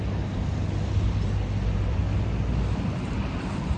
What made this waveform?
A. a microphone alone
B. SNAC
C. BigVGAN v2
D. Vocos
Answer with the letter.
A